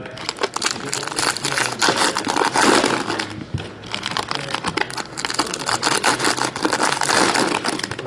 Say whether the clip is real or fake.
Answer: real